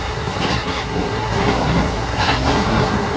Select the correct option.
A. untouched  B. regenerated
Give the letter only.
B